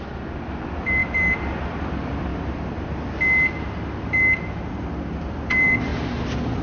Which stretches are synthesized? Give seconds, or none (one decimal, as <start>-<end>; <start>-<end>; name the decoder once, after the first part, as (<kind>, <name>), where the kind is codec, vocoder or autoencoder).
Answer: 0.0-2.3 (vocoder, BigVGAN v2); 5.1-6.6